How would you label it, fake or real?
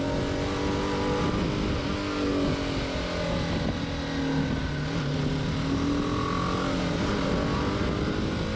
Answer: real